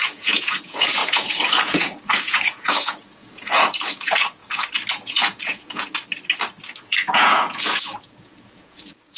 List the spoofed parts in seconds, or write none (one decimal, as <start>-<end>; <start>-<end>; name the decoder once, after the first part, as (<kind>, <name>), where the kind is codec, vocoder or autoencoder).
0.0-4.4 (vocoder, Vocos); 4.9-6.0; 6.8-9.2